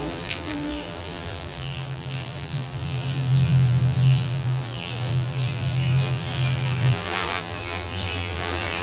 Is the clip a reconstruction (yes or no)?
yes